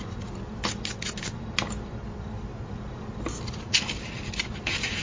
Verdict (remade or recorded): recorded